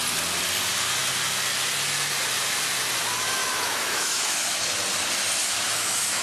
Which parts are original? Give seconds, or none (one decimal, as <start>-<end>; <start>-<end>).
0.0-3.4; 4.6-5.4